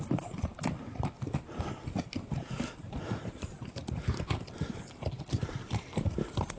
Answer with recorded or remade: recorded